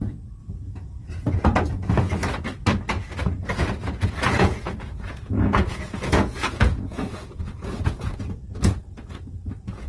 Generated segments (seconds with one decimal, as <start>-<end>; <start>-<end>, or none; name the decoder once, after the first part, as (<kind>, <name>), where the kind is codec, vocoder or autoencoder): 0.0-2.1 (vocoder, Vocos); 4.0-9.9